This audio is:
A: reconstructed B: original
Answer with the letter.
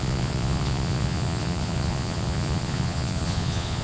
A